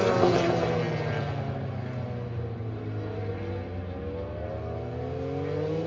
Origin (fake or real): real